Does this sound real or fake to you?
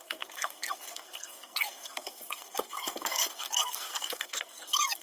fake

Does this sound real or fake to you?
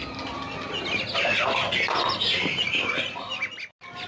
real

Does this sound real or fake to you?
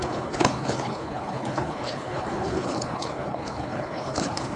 fake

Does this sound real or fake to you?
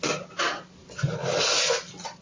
real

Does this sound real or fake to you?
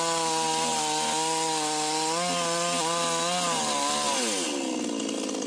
real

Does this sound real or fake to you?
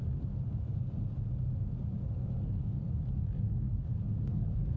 real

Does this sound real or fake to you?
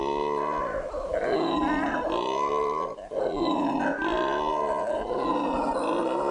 real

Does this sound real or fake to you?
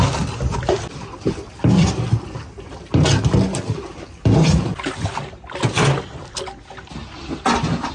real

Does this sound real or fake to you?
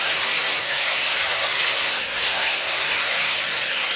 fake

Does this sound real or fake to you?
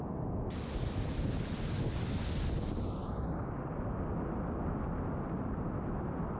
real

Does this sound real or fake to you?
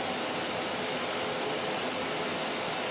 real